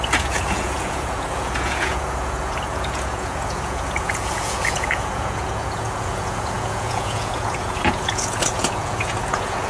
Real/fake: fake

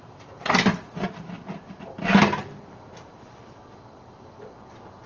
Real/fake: real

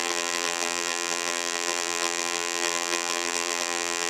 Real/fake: fake